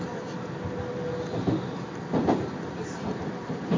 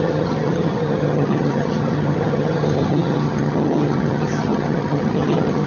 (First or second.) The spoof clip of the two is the second